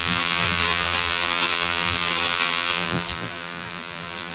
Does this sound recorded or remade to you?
remade